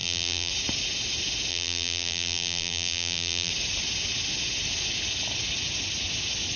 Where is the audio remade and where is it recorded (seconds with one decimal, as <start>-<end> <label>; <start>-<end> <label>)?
0.0-0.5 remade; 0.5-1.5 recorded; 1.5-3.5 remade; 3.5-6.6 recorded